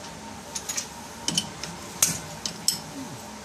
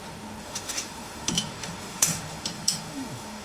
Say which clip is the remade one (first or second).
second